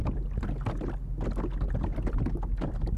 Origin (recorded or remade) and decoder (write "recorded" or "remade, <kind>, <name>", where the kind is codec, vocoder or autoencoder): recorded